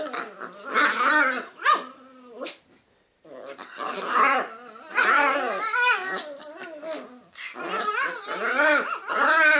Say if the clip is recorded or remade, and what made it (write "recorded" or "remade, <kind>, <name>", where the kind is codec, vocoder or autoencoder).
recorded